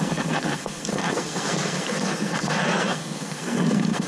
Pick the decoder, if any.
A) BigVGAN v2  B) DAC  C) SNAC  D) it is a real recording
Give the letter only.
C